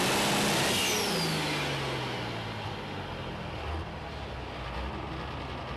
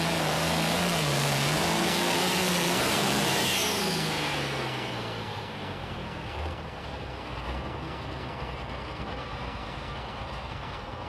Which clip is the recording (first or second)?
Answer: first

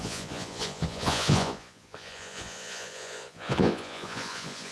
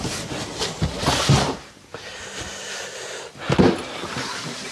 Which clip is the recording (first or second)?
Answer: second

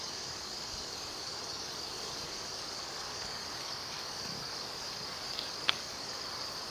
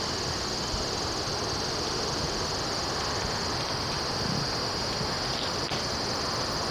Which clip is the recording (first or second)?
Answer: second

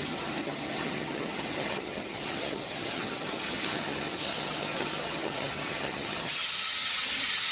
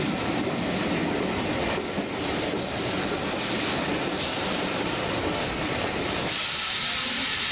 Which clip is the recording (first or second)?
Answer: second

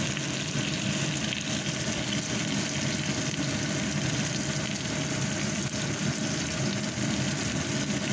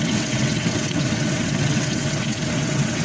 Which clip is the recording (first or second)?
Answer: first